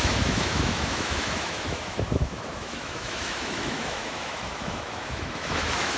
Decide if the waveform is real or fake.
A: fake